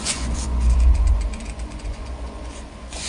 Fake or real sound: fake